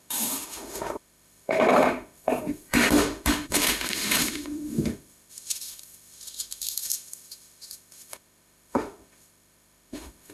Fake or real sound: fake